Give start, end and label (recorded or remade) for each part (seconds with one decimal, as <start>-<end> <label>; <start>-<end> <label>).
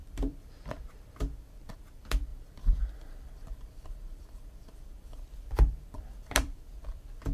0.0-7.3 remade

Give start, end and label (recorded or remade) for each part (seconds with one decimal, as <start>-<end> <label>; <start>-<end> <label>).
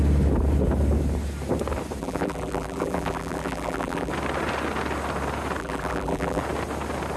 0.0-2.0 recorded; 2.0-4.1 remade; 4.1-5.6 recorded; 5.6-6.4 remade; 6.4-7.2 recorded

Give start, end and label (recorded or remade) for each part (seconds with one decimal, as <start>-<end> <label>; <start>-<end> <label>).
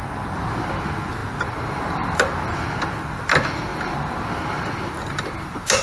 0.0-5.8 recorded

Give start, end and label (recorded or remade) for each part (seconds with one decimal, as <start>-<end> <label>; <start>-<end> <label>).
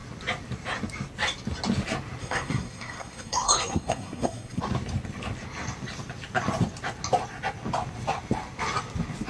0.0-2.2 recorded; 2.2-4.6 remade; 4.6-9.3 recorded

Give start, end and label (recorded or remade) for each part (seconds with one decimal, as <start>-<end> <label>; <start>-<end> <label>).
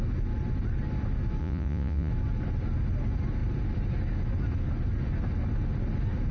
0.0-1.4 recorded; 1.4-2.1 remade; 2.1-6.3 recorded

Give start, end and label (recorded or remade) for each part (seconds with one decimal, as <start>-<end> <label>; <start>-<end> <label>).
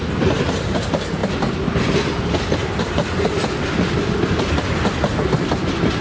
0.0-6.0 recorded